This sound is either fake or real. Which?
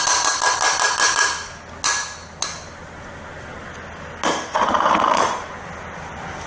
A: real